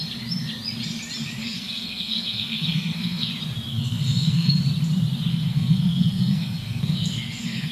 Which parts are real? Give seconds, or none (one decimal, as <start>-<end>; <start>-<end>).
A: 0.0-1.4; 3.3-3.7; 4.6-5.3